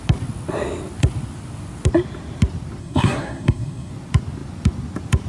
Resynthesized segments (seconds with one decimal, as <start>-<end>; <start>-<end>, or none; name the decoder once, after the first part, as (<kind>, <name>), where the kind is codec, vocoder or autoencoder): 2.8-3.9 (codec, SNAC)